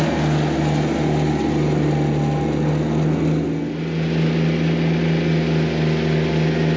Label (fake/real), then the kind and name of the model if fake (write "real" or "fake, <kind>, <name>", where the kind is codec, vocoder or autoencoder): real